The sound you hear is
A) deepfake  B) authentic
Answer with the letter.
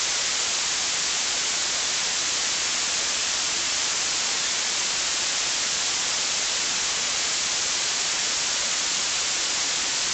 A